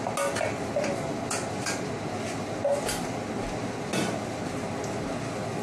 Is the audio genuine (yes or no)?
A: yes